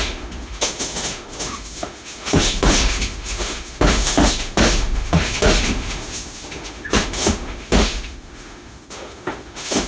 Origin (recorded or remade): remade